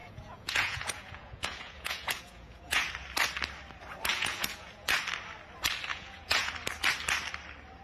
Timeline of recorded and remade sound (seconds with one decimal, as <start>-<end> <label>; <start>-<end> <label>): 0.0-2.9 remade; 2.9-4.1 recorded; 4.1-4.9 remade; 4.9-5.9 recorded; 5.9-6.5 remade; 6.5-7.8 recorded